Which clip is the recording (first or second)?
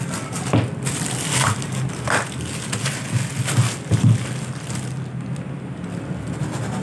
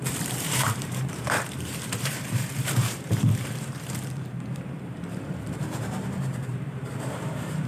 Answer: first